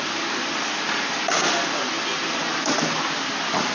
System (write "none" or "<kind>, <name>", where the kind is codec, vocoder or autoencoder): none